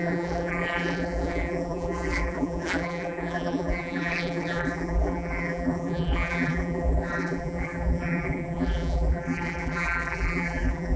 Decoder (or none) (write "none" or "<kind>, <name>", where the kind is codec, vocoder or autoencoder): vocoder, BigVGAN v2